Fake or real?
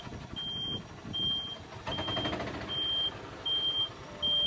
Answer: real